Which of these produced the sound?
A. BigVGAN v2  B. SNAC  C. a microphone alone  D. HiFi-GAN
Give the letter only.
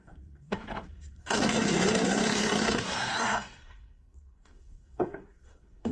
B